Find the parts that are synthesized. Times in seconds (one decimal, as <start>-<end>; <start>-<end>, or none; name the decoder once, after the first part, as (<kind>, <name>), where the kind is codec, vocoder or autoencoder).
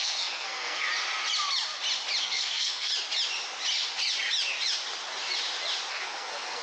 0.0-0.9 (codec, SNAC); 2.2-2.9; 5.9-6.6